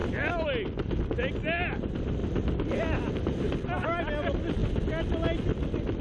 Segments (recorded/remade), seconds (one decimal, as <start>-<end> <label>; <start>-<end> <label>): 0.0-2.2 recorded; 2.2-3.1 remade; 3.1-6.0 recorded